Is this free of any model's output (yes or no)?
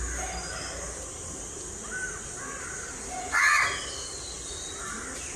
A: yes